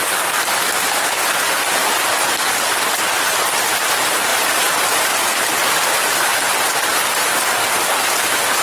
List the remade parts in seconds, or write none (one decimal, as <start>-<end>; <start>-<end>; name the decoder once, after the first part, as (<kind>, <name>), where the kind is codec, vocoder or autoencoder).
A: 1.8-2.4 (vocoder, BigVGAN v2); 4.3-5.1; 5.6-6.3